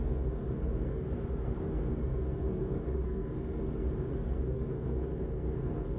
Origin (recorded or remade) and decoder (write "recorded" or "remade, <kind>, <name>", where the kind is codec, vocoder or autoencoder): remade, codec, SNAC